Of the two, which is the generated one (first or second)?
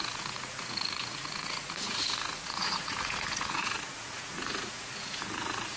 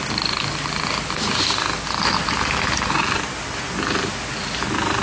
first